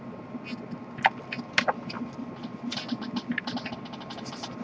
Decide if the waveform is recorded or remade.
recorded